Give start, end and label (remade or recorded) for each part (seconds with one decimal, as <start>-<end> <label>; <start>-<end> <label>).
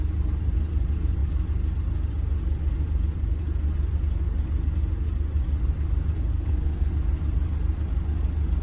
0.0-6.3 recorded; 6.3-6.9 remade; 6.9-8.6 recorded